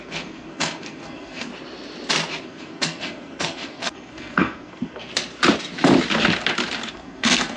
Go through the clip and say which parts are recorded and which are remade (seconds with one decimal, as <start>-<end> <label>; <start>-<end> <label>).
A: 0.0-1.5 remade; 1.5-2.4 recorded; 2.4-5.1 remade; 5.1-6.9 recorded; 6.9-7.6 remade